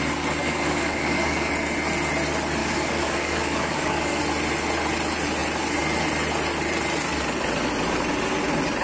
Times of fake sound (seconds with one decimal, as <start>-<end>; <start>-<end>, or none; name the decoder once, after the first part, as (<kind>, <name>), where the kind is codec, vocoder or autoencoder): 0.4-1.5 (codec, DAC); 2.6-4.2